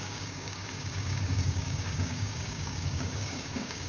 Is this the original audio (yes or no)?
no